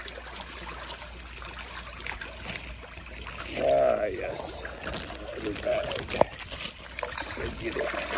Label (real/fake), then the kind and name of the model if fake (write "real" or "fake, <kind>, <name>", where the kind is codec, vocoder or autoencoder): real